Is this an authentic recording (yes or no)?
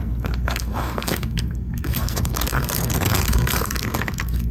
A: no